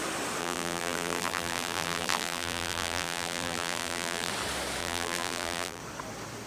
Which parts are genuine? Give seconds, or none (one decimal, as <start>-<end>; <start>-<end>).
0.0-0.4; 4.3-4.8; 5.8-6.5